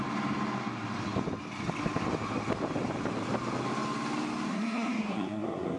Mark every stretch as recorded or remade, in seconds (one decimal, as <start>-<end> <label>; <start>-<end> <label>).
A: 0.0-4.5 recorded; 4.5-5.8 remade